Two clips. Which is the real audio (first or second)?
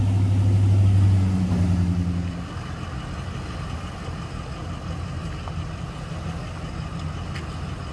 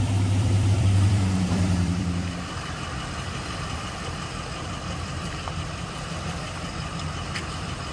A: first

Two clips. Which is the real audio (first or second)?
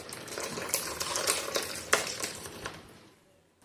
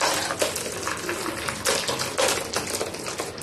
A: second